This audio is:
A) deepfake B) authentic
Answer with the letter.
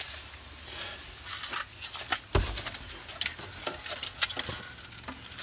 B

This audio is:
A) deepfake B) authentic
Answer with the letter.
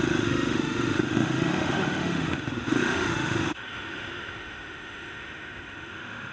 A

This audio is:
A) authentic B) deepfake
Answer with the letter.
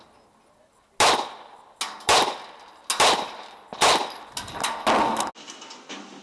A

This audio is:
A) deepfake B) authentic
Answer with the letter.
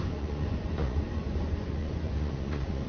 A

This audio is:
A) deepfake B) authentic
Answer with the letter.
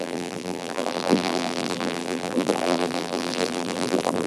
A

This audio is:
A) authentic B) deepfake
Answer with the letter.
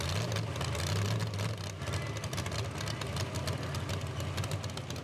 A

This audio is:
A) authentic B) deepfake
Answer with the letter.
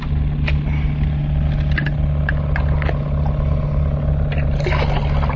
A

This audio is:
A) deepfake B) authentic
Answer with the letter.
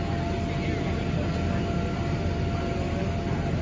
B